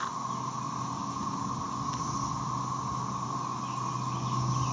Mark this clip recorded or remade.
recorded